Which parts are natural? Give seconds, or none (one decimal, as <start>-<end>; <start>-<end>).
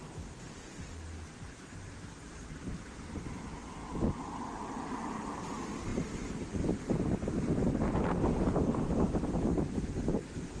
0.0-10.6